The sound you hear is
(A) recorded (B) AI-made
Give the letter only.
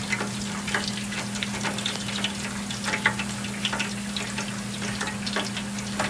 A